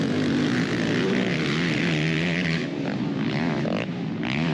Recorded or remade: recorded